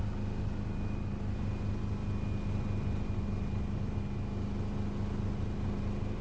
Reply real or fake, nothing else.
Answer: real